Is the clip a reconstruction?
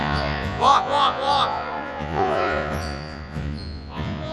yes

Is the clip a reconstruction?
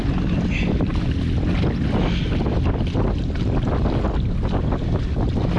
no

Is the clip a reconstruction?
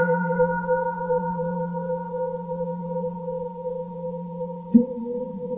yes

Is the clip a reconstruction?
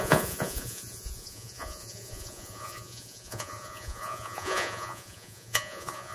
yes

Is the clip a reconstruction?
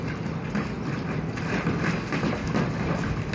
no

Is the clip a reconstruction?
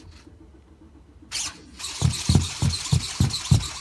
no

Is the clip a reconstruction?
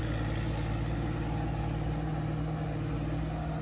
no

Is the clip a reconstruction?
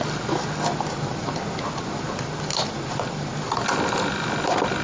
no